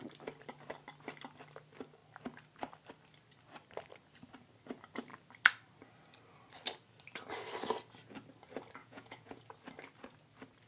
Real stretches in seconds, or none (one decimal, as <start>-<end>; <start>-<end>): 0.0-8.8; 9.4-10.7